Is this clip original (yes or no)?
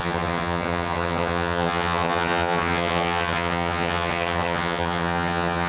no